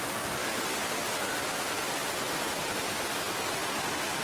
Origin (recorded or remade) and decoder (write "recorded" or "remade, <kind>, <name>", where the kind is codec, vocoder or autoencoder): recorded